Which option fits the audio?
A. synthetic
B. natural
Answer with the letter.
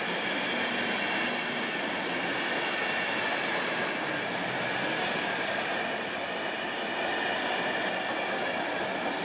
B